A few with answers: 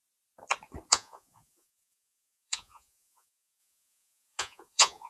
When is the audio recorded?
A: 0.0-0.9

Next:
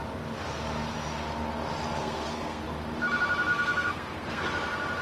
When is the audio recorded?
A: 0.0-2.0; 2.6-3.5; 4.4-5.0